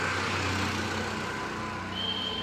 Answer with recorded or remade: recorded